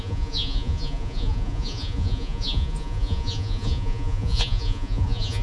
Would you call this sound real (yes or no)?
no